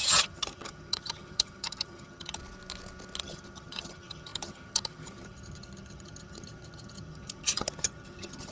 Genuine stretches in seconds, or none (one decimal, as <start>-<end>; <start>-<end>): 2.4-3.2